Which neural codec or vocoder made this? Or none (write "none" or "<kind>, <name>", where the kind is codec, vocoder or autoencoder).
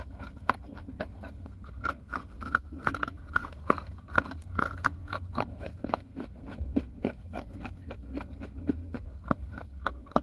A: codec, SNAC